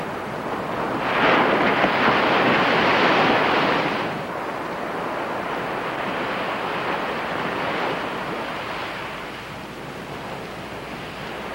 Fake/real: real